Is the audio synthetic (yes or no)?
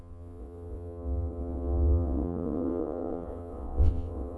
yes